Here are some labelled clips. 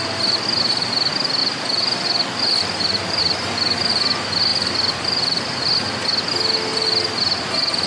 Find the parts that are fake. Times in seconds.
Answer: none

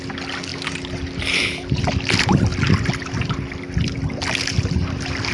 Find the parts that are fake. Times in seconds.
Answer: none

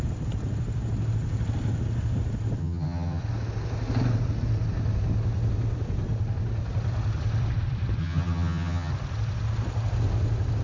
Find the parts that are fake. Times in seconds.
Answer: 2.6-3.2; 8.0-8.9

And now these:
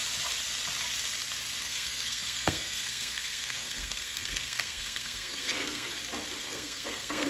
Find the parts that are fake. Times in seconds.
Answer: 1.6-5.9; 6.4-7.3

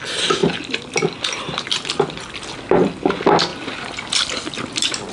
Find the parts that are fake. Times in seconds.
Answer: none

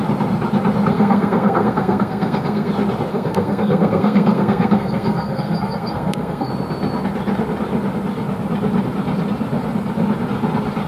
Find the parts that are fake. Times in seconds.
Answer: 0.9-2.7; 3.1-6.5

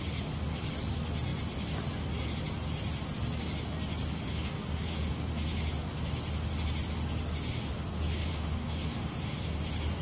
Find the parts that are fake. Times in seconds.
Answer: 4.2-5.1; 8.3-9.6

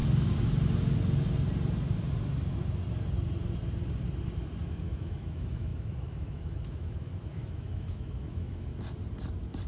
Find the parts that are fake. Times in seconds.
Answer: 4.7-8.7